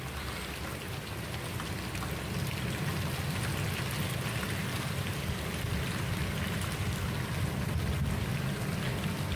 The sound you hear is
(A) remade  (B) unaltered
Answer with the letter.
B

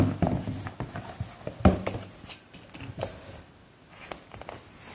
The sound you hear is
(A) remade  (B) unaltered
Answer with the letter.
B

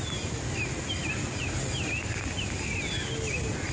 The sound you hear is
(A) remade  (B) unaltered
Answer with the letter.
B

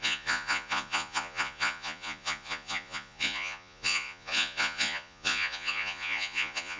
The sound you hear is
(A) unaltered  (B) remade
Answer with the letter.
B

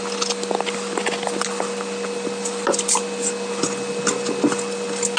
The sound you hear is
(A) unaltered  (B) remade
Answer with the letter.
A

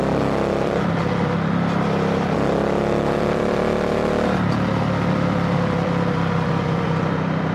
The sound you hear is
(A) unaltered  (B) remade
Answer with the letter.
B